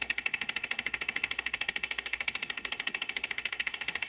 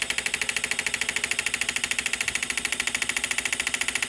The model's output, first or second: first